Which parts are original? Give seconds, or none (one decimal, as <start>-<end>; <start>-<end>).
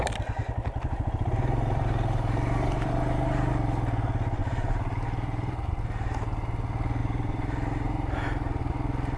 0.0-0.4; 3.5-4.4; 5.7-7.0; 8.6-9.2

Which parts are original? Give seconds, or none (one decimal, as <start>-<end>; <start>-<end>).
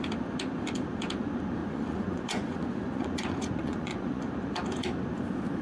0.0-1.6; 4.2-5.6